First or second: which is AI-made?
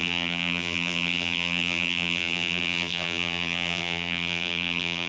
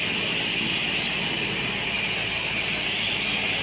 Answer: first